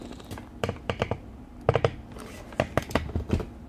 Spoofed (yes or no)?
no